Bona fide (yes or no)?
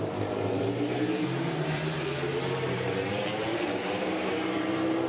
no